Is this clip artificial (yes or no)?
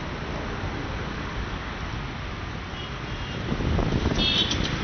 no